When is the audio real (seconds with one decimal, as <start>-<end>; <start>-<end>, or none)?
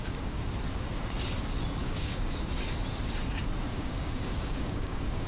0.5-1.8; 2.3-3.7